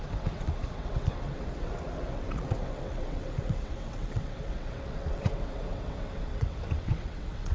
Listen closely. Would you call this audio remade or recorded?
remade